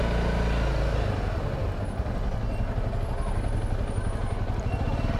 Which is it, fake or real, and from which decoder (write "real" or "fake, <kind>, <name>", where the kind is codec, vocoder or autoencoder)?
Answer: real